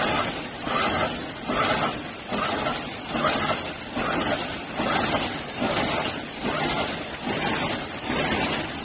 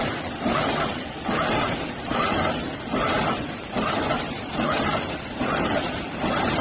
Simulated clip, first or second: second